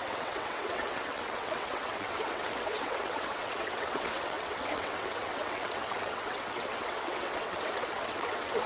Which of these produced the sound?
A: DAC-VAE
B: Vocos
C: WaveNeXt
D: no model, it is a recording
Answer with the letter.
C